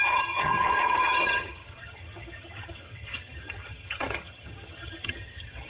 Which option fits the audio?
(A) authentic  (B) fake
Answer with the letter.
B